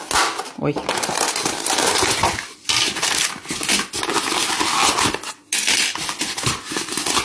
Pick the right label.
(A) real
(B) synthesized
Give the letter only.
A